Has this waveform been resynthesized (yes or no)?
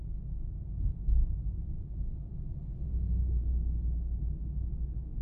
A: no